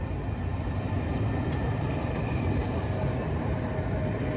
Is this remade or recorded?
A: recorded